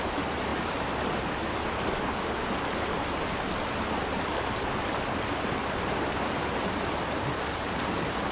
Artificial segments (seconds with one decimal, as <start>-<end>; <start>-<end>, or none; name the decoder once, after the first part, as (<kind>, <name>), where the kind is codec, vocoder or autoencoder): none